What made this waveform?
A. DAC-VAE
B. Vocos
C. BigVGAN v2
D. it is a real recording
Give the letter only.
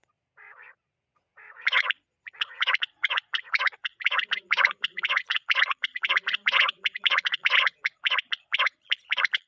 B